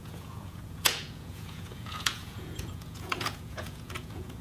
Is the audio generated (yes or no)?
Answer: yes